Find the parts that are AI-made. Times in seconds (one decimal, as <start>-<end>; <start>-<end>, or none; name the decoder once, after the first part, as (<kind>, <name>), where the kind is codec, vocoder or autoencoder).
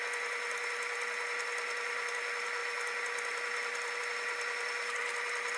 none